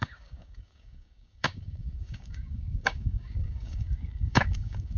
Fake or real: fake